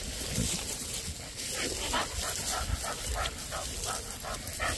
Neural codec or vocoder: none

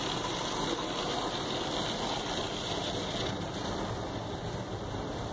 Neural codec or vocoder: none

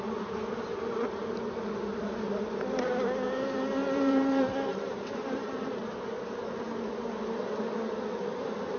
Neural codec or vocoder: vocoder, BigVGAN v2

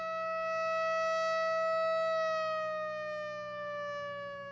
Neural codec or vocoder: none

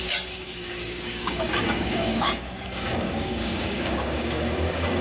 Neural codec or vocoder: codec, DAC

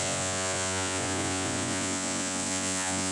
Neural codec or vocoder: vocoder, Vocos